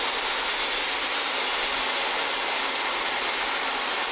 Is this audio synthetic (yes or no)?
no